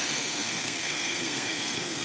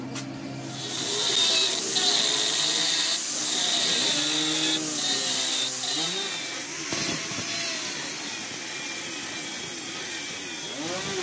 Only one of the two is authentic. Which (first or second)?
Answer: second